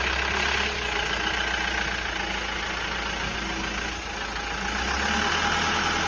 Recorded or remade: recorded